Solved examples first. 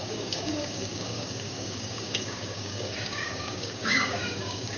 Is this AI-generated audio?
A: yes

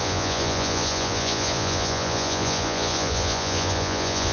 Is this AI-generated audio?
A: yes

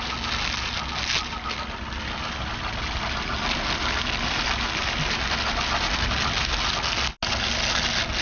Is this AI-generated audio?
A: no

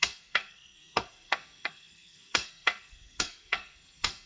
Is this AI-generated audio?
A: yes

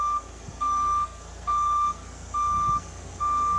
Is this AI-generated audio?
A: yes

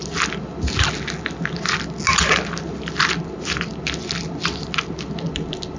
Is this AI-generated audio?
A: no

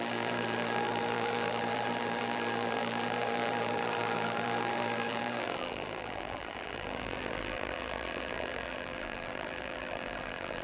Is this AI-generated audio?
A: yes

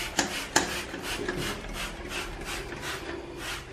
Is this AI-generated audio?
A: yes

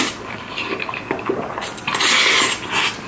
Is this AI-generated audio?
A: no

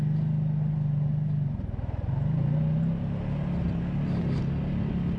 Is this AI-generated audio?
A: no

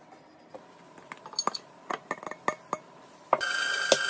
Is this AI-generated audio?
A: no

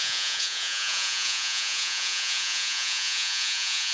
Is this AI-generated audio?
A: yes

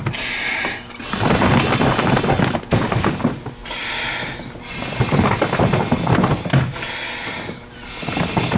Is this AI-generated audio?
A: no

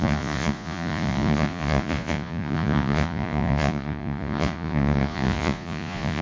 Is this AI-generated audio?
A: yes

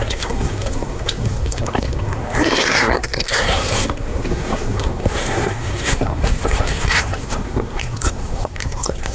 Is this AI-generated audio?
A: yes